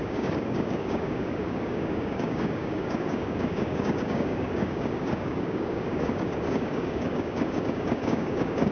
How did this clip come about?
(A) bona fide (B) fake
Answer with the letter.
B